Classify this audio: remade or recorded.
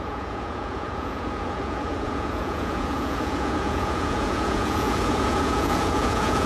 remade